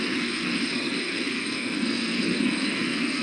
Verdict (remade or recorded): remade